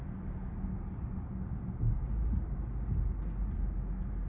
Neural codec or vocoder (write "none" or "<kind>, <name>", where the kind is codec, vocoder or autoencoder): none